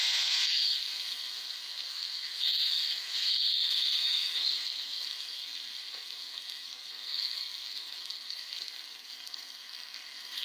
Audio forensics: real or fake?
fake